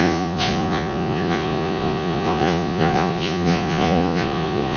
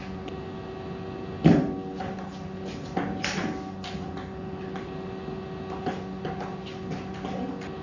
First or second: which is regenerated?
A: first